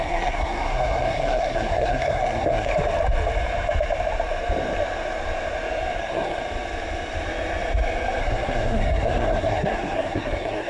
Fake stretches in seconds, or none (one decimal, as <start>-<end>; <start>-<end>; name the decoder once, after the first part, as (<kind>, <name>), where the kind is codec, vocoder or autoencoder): 0.0-2.7 (codec, SNAC); 6.0-6.4; 8.2-10.7